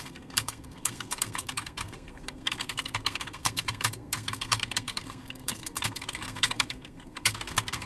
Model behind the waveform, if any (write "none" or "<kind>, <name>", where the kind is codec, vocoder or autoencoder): codec, SNAC